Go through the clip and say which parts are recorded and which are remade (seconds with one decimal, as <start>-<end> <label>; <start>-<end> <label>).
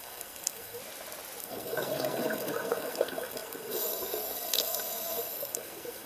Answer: 0.0-0.8 remade; 0.8-1.4 recorded; 1.4-6.1 remade